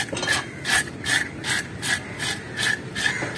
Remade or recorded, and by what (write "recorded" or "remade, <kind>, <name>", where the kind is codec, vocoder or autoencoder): recorded